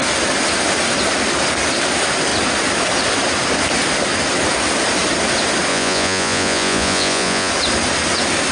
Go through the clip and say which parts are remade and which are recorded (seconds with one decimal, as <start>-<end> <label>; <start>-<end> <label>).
0.0-5.7 recorded; 5.7-7.5 remade; 7.5-8.5 recorded